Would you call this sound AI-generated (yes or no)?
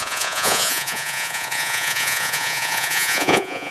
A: yes